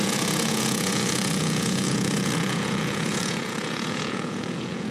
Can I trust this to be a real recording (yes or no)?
no